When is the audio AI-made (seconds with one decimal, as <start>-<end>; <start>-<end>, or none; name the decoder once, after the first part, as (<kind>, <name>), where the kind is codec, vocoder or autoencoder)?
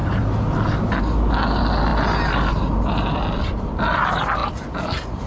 none